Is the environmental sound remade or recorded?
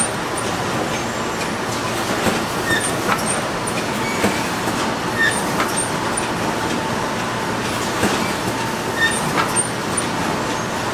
recorded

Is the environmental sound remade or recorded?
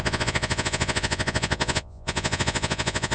remade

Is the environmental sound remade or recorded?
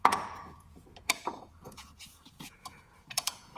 remade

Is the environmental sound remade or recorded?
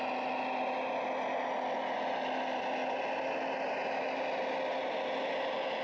recorded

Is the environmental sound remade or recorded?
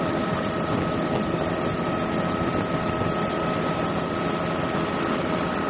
recorded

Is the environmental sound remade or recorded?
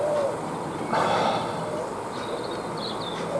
recorded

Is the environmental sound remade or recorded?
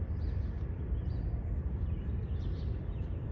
recorded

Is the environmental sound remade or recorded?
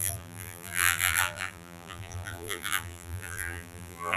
remade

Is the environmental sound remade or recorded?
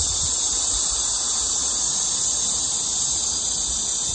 recorded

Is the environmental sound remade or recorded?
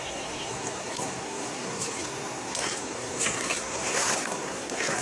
remade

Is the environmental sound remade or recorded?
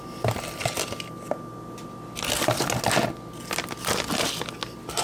recorded